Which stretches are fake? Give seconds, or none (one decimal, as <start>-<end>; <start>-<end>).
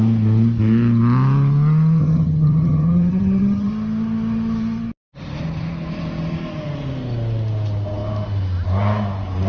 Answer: 2.0-3.7